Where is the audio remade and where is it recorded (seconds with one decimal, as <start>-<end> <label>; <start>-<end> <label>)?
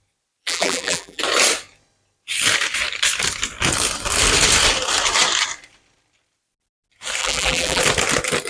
0.0-0.4 recorded; 0.4-1.2 remade; 1.2-7.2 recorded; 7.2-7.8 remade; 7.8-8.5 recorded